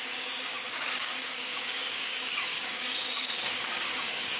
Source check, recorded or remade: remade